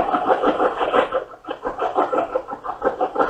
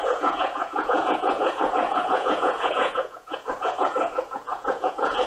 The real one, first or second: first